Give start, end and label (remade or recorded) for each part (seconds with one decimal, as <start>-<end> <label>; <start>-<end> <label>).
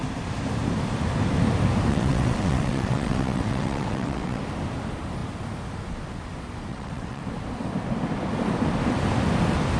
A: 0.0-1.9 recorded; 1.9-4.4 remade; 4.4-6.7 recorded; 6.7-7.2 remade; 7.2-9.8 recorded